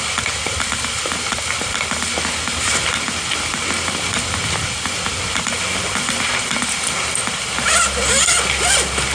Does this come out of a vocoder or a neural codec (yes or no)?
no